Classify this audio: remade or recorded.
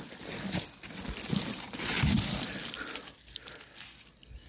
recorded